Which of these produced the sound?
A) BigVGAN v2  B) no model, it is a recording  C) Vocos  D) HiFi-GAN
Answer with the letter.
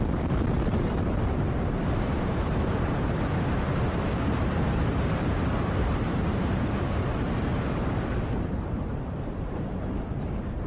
A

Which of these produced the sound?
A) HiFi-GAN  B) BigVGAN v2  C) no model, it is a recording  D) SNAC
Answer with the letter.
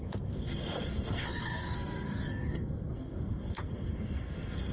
D